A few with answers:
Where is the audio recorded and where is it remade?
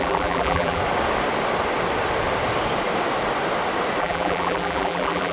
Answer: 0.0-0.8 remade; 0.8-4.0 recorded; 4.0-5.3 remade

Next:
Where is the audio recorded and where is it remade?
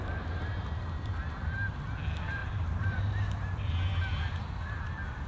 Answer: 0.0-2.4 recorded; 2.4-4.6 remade; 4.6-5.3 recorded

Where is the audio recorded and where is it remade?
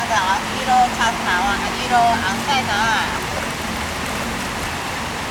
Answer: 0.0-1.0 remade; 1.0-3.3 recorded; 3.3-4.5 remade; 4.5-5.3 recorded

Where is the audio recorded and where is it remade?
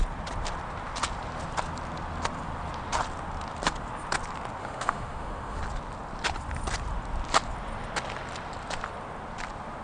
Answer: 0.0-4.6 recorded; 4.6-5.6 remade; 5.6-9.8 recorded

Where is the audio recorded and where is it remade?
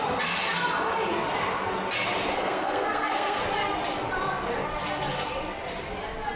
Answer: 0.0-2.3 recorded; 2.3-3.4 remade; 3.4-6.4 recorded